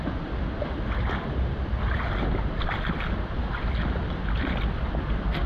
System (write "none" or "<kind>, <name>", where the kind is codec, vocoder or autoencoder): none